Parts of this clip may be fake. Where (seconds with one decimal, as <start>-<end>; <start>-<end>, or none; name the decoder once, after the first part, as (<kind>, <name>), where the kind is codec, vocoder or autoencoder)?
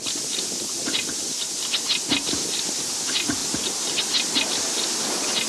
none